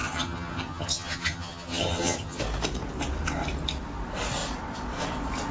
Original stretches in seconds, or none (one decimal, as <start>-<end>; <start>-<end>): 2.4-5.5